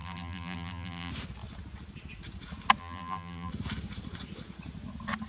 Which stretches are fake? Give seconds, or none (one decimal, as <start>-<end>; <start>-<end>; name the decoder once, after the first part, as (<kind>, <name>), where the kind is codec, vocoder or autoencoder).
0.0-1.1 (vocoder, BigVGAN v2); 2.8-3.5